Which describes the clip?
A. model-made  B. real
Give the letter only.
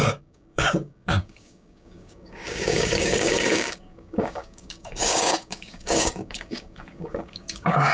A